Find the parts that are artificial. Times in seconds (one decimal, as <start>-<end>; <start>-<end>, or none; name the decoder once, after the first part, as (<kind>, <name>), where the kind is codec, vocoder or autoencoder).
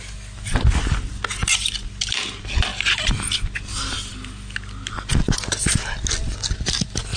none